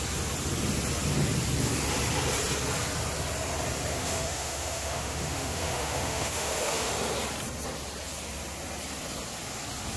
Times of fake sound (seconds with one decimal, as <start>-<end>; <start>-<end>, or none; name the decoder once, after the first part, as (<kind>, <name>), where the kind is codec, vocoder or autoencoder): 3.9-6.9 (autoencoder, DAC-VAE)